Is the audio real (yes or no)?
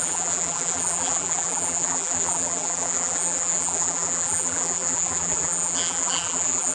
no